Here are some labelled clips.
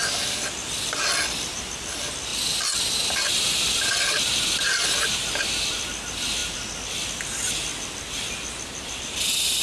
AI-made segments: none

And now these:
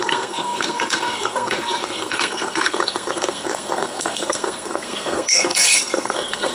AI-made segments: 0.0-6.5 (codec, SNAC)

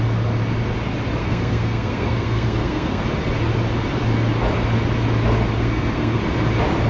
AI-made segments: 1.2-3.0 (codec, SNAC); 5.6-6.2

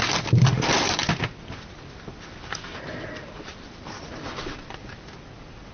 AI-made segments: none

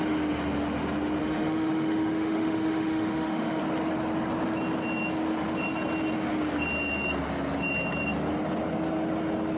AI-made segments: 1.2-3.6 (autoencoder, DAC-VAE)